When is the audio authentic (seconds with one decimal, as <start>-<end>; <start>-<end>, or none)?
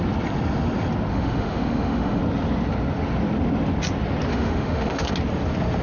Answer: 0.0-1.1; 2.2-4.3; 5.1-5.8